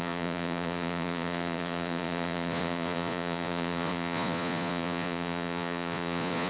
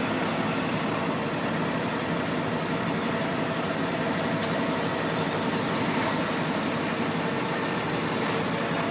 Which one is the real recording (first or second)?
second